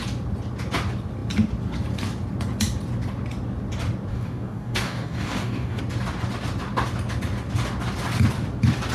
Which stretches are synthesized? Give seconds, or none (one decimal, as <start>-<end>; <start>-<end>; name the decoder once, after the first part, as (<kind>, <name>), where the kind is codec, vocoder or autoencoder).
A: 4.1-5.8 (codec, DAC)